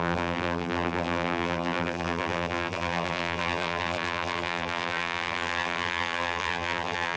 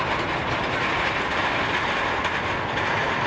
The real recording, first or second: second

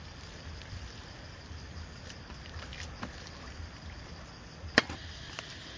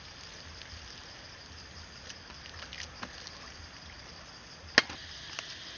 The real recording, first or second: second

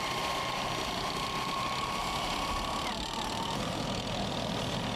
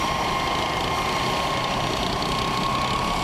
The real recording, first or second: second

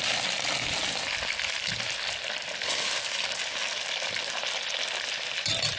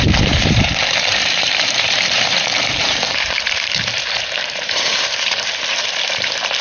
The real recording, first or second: first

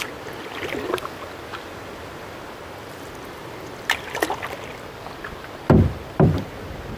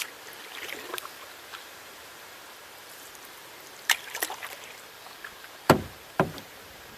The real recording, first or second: first